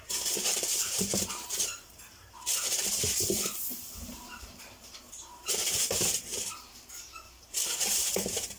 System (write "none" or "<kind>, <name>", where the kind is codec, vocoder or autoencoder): vocoder, BigVGAN v2